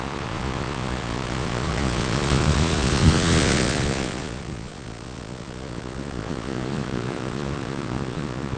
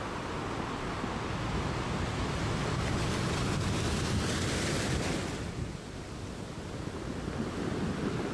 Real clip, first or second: second